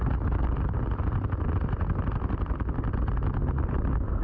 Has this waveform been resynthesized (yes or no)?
no